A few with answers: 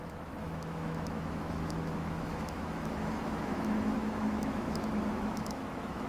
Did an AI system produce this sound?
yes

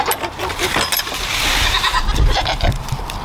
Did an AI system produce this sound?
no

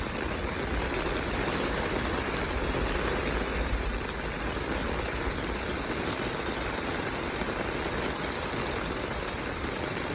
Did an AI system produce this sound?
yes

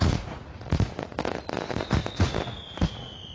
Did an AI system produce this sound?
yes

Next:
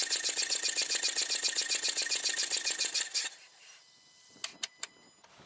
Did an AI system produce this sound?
no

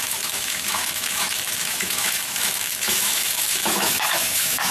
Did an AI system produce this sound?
yes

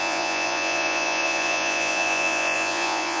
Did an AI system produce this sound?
yes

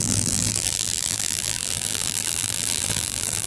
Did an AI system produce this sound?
yes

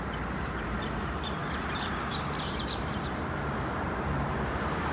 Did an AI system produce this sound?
yes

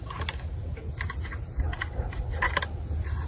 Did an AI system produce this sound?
no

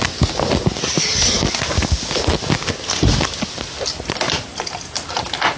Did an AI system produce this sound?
no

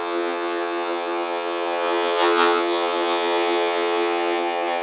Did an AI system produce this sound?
yes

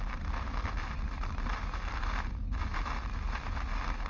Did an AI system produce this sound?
no